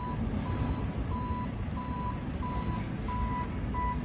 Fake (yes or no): no